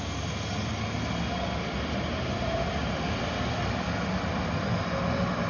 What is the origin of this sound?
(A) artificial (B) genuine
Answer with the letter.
B